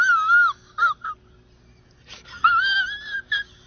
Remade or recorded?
recorded